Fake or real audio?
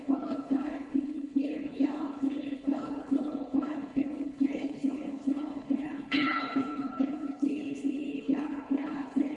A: fake